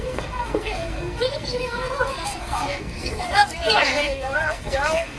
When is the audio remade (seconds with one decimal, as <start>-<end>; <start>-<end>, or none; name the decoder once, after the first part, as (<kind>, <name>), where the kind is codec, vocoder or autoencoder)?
0.0-5.2 (codec, SNAC)